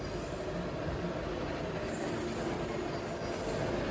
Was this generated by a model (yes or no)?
no